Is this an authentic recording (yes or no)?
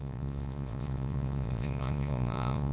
no